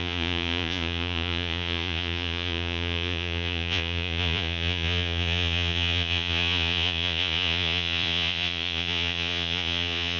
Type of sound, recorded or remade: remade